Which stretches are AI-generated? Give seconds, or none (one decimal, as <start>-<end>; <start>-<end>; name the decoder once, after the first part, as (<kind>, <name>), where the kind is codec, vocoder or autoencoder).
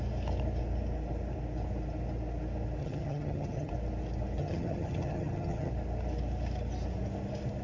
2.8-3.7 (vocoder, HiFi-GAN); 4.4-5.7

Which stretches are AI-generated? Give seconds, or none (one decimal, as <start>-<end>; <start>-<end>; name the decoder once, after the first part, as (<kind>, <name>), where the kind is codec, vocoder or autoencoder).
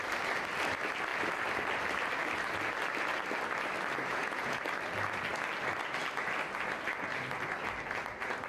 4.1-4.6 (vocoder, Vocos)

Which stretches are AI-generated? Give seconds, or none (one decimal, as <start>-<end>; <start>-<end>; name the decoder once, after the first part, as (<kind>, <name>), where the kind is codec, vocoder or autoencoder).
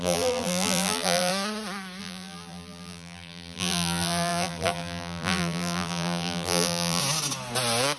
0.0-1.3 (vocoder, BigVGAN v2); 2.0-7.0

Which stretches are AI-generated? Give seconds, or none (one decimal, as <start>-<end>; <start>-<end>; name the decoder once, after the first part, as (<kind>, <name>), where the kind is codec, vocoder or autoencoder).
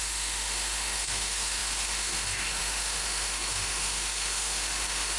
0.0-5.2 (autoencoder, DAC-VAE)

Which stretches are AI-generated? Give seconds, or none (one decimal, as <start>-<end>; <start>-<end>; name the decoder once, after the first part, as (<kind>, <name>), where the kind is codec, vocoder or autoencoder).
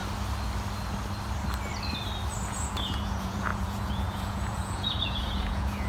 2.5-5.9 (vocoder, Vocos)